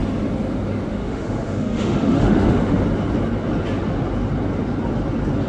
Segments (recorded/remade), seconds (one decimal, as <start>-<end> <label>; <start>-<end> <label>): 0.0-0.9 recorded; 0.9-2.8 remade; 2.8-5.5 recorded